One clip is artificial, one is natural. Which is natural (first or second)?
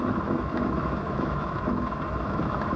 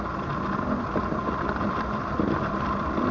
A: second